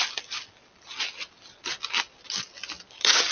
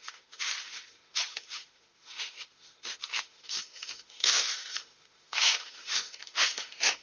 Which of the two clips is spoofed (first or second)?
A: second